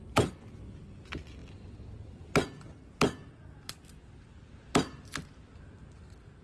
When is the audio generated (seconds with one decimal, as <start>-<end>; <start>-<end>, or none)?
none